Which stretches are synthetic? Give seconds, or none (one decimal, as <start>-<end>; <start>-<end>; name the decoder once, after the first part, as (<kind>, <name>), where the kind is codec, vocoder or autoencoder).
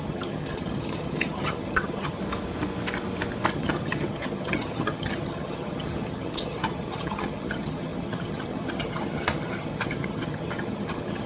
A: 0.0-2.2 (vocoder, HiFi-GAN); 3.5-11.3